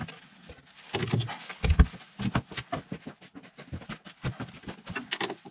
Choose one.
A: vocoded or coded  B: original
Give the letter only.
B